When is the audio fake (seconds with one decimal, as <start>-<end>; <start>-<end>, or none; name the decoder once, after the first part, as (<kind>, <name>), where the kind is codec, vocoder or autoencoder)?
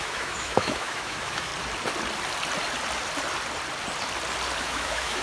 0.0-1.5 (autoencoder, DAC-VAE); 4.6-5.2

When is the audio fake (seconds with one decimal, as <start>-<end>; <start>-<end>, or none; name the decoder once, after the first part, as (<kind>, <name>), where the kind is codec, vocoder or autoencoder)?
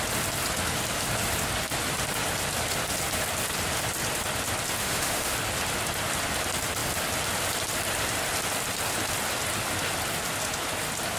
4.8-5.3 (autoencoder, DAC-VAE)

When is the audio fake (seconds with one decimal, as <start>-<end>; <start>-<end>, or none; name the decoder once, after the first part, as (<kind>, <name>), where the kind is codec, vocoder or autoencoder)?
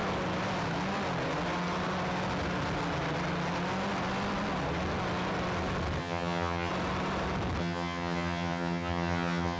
6.0-6.7 (vocoder, HiFi-GAN); 7.6-9.6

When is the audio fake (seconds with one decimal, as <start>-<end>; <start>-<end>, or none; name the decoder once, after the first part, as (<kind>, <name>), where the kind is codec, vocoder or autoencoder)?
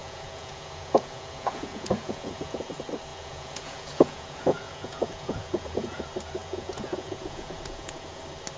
0.0-2.7 (vocoder, Vocos); 3.1-6.0; 6.4-8.2